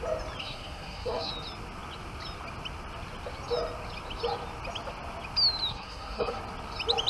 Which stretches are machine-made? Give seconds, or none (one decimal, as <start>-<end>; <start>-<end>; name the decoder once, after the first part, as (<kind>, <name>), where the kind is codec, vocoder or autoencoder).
0.4-1.3 (codec, SNAC); 5.7-6.4